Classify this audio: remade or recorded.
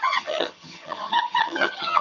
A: remade